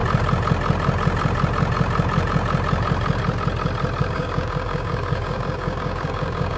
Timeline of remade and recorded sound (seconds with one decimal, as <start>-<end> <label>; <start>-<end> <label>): 0.0-4.0 recorded; 4.0-6.6 remade